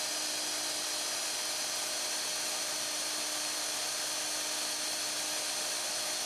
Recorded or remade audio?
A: recorded